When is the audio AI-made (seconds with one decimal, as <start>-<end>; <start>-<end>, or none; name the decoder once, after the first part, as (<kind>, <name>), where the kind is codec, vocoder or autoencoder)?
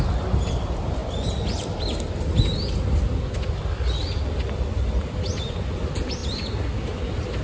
none